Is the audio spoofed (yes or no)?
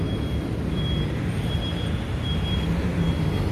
no